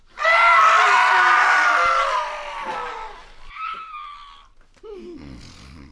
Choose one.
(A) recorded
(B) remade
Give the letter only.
A